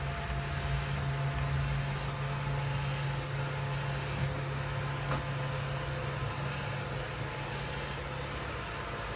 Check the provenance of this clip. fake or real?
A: real